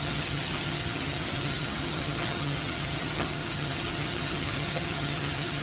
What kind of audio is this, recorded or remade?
remade